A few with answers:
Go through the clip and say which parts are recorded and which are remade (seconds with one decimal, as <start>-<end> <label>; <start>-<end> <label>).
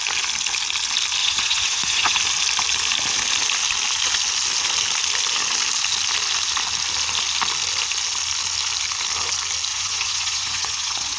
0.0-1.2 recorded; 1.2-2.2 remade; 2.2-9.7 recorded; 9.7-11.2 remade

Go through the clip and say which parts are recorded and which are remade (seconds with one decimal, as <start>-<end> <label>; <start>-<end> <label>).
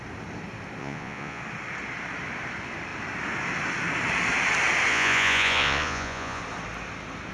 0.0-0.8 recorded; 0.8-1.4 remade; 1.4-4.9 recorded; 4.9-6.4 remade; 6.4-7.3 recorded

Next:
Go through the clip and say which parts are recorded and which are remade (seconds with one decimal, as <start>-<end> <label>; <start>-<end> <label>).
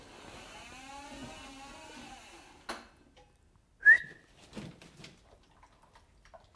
0.0-6.6 recorded